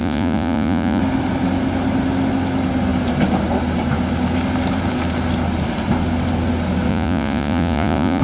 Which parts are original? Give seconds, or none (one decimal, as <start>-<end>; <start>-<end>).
1.0-6.9